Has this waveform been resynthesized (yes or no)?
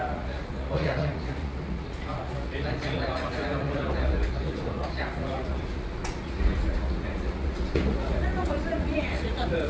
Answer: yes